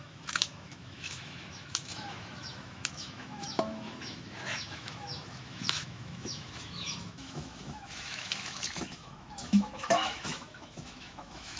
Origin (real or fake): fake